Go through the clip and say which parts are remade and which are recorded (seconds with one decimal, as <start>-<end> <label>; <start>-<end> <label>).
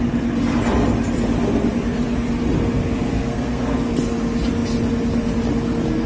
0.0-2.6 recorded; 2.6-3.9 remade; 3.9-6.1 recorded